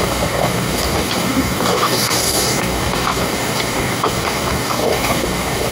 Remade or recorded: remade